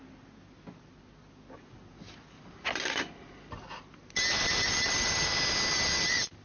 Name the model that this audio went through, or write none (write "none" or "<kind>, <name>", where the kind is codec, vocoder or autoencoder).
none